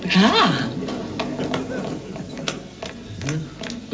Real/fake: real